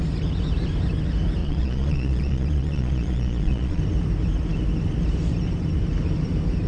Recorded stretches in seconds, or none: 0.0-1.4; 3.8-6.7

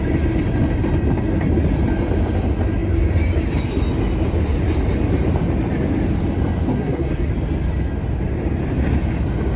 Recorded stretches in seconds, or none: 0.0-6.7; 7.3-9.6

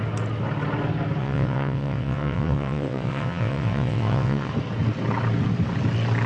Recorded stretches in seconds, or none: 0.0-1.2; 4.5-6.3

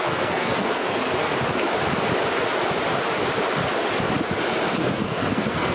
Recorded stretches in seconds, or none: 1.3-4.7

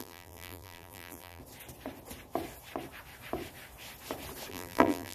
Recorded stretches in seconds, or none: 1.4-4.5

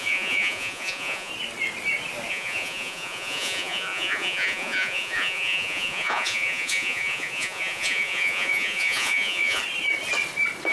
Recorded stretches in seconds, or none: 1.3-2.3; 9.6-10.7

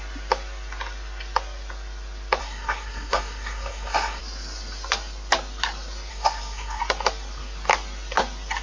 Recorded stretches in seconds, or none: 0.0-2.4; 4.2-6.1; 6.8-8.6

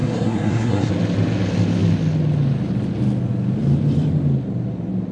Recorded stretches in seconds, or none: 0.9-5.1